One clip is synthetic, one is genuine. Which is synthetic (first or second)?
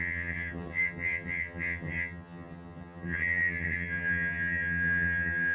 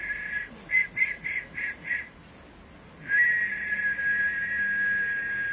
first